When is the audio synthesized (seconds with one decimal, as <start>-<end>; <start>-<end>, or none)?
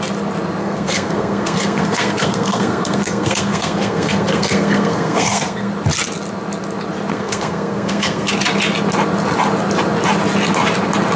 0.6-5.7; 7.1-8.3